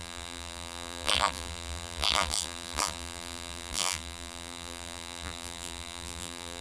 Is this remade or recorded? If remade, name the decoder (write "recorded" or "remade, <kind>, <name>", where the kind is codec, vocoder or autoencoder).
remade, vocoder, BigVGAN v2